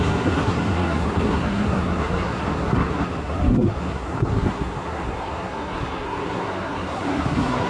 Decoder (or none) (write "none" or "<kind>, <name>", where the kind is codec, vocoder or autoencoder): codec, SNAC